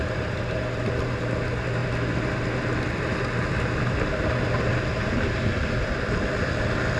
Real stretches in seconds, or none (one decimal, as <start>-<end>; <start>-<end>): 0.0-7.0